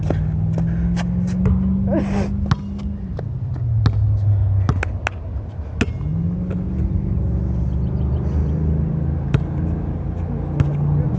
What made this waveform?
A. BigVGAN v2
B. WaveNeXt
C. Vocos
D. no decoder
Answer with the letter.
D